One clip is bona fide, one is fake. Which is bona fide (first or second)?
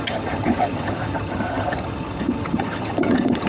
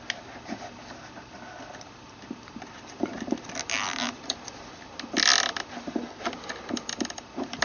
second